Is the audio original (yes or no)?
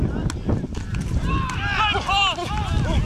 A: yes